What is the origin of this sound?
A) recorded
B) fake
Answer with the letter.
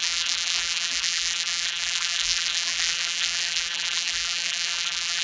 B